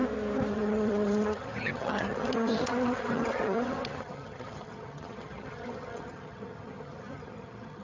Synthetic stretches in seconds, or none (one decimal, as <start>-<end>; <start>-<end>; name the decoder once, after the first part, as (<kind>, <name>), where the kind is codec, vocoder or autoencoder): 0.5-7.8 (vocoder, HiFi-GAN)